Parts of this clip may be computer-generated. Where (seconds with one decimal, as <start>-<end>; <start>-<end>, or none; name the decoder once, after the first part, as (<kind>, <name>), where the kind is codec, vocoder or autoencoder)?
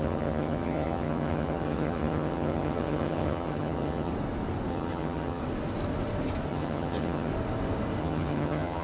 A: 0.0-4.1 (vocoder, HiFi-GAN); 4.7-5.4; 6.5-7.3; 8.0-8.8